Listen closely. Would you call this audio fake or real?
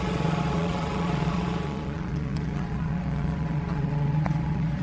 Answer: fake